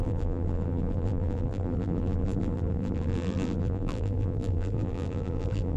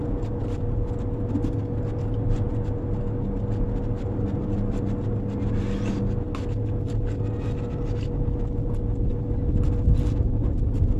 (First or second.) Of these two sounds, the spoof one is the first